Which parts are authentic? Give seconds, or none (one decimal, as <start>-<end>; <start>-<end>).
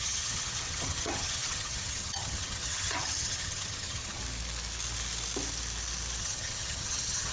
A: 4.2-6.2